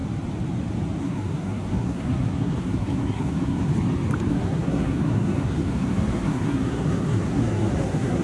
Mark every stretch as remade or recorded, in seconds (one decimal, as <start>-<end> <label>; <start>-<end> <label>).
0.0-1.0 recorded; 1.0-3.7 remade; 3.7-4.3 recorded; 4.3-8.2 remade